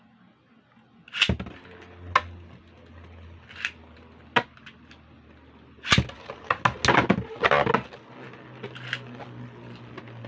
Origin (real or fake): real